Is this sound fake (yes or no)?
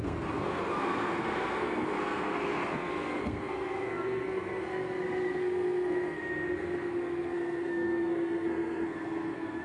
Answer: yes